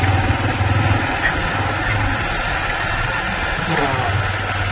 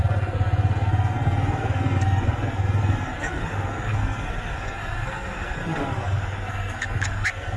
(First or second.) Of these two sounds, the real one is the first